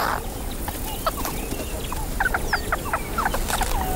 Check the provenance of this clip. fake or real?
real